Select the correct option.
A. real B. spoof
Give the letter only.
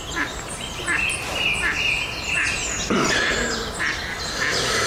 A